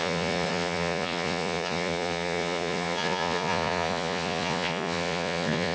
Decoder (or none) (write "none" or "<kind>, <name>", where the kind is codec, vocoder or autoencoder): vocoder, Vocos